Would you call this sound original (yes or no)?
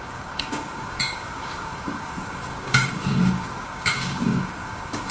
no